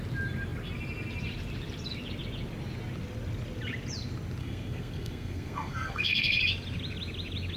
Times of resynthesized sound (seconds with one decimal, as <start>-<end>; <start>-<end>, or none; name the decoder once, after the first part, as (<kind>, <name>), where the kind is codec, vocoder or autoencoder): 4.4-6.4 (codec, SNAC)